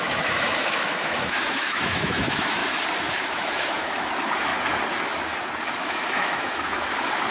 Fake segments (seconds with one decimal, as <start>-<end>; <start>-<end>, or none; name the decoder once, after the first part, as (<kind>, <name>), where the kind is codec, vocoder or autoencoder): 0.0-2.6 (autoencoder, DAC-VAE); 3.1-4.5; 5.8-7.3